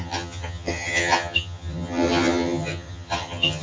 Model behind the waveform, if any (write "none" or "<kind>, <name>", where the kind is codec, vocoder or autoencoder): vocoder, HiFi-GAN